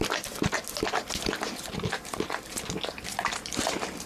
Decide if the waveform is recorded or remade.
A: recorded